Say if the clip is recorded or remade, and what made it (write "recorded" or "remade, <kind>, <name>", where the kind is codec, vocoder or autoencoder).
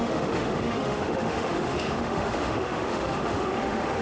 remade, autoencoder, DAC-VAE